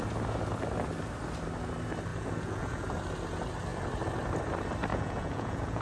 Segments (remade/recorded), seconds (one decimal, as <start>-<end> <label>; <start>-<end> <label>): 0.0-2.1 recorded; 2.1-2.8 remade; 2.8-4.9 recorded; 4.9-5.8 remade